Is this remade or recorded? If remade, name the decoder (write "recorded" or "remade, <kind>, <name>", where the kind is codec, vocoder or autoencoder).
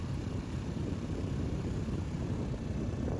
remade, vocoder, BigVGAN v2